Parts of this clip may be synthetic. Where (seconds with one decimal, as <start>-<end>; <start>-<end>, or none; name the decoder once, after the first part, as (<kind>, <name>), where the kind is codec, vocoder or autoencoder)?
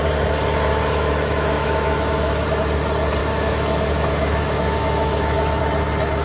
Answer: 0.8-2.3 (autoencoder, DAC-VAE); 3.2-5.6